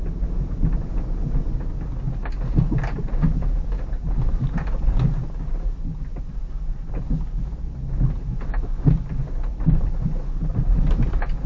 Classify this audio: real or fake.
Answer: real